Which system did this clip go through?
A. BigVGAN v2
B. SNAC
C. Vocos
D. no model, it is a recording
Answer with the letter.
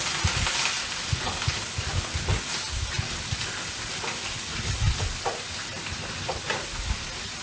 D